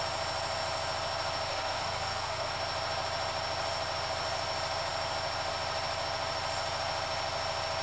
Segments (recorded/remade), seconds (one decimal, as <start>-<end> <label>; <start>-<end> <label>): 0.0-1.5 recorded; 1.5-2.5 remade; 2.5-7.8 recorded